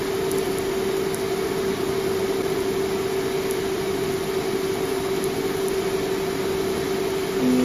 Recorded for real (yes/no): yes